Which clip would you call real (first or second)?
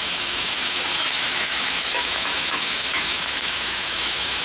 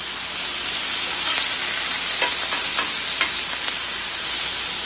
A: second